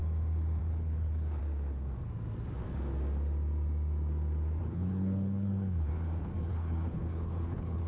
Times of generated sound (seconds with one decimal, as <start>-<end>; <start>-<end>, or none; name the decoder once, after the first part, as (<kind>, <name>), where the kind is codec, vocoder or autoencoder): 0.6-1.4 (codec, HILCodec); 4.6-5.9; 6.5-7.9